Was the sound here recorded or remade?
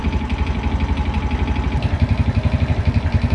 recorded